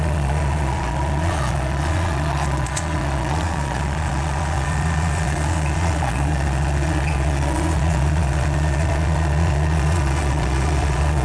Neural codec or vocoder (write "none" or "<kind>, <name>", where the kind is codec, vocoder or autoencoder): vocoder, Vocos